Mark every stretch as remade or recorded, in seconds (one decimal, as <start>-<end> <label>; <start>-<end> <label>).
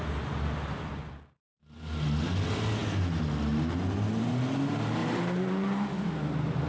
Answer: 0.0-0.9 recorded; 0.9-1.6 remade; 1.6-5.0 recorded; 5.0-5.5 remade; 5.5-6.7 recorded